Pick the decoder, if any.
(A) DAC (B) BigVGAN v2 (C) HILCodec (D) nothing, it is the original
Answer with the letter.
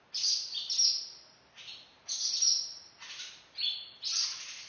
D